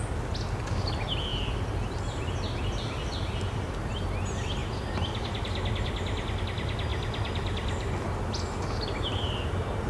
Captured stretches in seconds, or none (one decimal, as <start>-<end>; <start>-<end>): 0.0-1.3; 2.2-9.9

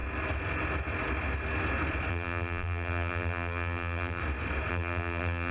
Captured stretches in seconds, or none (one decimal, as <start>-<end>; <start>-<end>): 0.0-2.1; 4.2-4.7

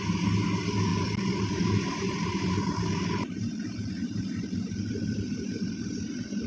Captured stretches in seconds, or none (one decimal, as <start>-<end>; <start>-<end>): 0.0-0.9; 4.8-6.5